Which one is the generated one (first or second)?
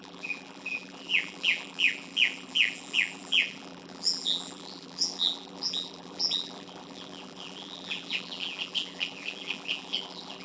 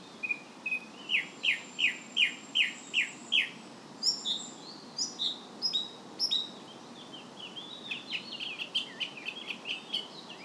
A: first